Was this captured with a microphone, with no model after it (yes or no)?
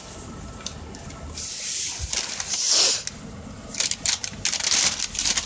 yes